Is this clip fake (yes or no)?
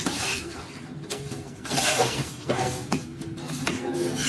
yes